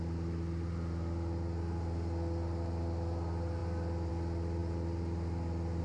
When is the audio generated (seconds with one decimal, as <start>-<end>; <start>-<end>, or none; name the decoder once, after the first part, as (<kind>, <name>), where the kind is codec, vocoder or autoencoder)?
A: none